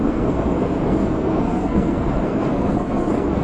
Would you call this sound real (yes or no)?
no